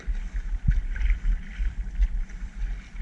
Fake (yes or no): no